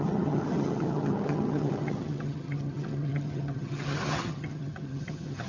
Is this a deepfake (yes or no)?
yes